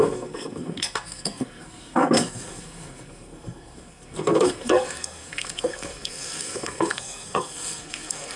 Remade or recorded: remade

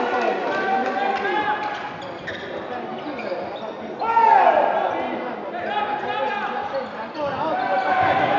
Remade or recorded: recorded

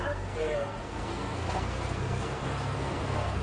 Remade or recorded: remade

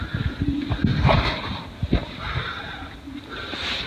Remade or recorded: recorded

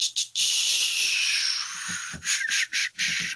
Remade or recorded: recorded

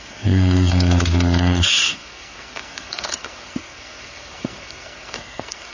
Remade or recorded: remade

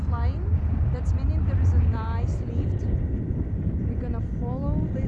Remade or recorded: recorded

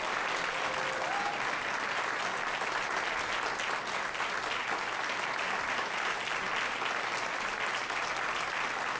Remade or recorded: recorded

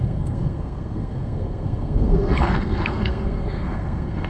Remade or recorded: remade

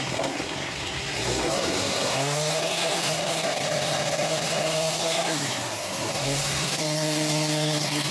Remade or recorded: remade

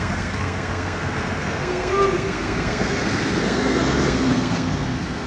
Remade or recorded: remade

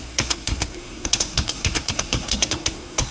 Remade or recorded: remade